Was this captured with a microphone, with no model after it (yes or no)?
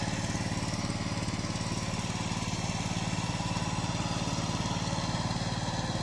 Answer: yes